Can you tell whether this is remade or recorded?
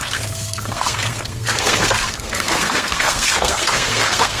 remade